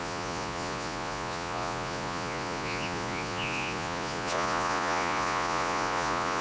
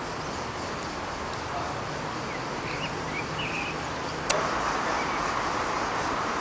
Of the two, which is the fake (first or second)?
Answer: first